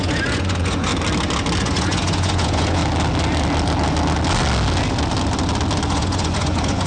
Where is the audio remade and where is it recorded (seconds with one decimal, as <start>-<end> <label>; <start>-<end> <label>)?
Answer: 0.0-0.9 remade; 0.9-1.6 recorded; 1.6-2.8 remade; 2.8-5.9 recorded; 5.9-6.9 remade